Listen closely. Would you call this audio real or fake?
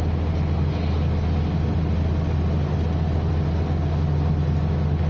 real